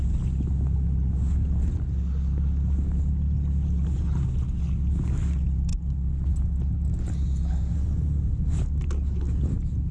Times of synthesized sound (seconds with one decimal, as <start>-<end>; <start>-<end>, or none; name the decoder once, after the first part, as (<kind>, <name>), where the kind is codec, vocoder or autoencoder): none

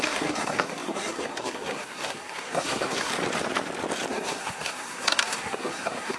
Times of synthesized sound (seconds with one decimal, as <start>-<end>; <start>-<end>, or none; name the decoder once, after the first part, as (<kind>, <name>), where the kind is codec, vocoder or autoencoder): 0.0-3.1 (codec, SNAC); 4.1-6.2

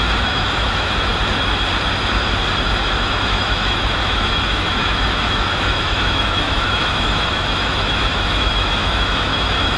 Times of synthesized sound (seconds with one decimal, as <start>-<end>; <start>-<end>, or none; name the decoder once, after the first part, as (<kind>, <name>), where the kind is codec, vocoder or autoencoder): 0.0-1.1 (autoencoder, DAC-VAE); 3.0-9.8

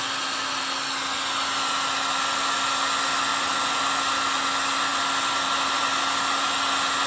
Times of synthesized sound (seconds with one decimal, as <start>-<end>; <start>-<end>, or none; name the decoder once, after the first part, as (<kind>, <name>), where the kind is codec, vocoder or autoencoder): none

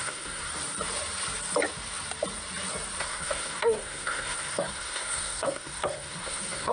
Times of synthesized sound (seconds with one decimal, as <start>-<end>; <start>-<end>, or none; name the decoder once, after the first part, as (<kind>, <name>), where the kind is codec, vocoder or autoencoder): 0.0-0.5 (codec, SNAC); 3.0-6.7